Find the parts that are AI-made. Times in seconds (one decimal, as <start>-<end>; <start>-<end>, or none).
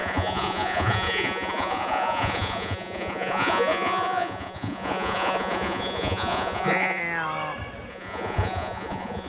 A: 0.0-7.0; 7.9-9.3